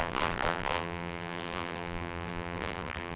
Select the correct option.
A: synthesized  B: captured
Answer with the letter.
A